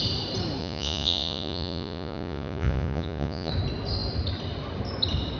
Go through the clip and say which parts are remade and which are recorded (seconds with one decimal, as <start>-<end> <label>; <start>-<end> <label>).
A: 0.0-0.6 recorded; 0.6-3.5 remade; 3.5-5.4 recorded

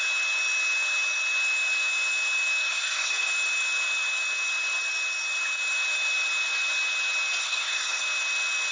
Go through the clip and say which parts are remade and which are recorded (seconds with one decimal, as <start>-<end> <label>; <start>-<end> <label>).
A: 0.0-2.7 recorded; 2.7-3.3 remade; 3.3-7.4 recorded; 7.4-8.0 remade; 8.0-8.7 recorded

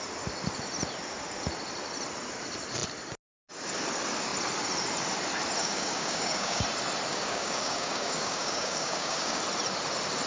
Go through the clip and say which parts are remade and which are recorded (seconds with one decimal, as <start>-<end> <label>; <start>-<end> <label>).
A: 0.0-5.6 recorded; 5.6-6.6 remade; 6.6-7.1 recorded; 7.1-9.4 remade; 9.4-10.3 recorded

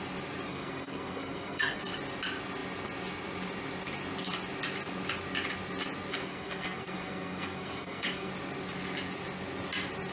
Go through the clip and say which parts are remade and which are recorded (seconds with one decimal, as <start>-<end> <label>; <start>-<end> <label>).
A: 0.0-0.5 recorded; 0.5-1.8 remade; 1.8-6.1 recorded; 6.1-8.3 remade; 8.3-10.1 recorded

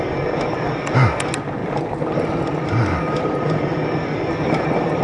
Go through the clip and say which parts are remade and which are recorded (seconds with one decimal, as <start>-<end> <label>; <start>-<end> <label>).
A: 0.0-5.0 recorded